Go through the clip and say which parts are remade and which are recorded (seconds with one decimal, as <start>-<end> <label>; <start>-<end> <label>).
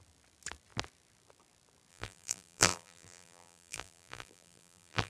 0.0-1.9 recorded; 1.9-5.1 remade